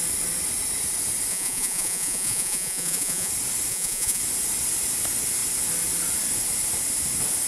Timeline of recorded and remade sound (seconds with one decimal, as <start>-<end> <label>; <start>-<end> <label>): 0.0-1.3 recorded; 1.3-3.3 remade; 3.3-3.7 recorded; 3.7-4.2 remade; 4.2-7.5 recorded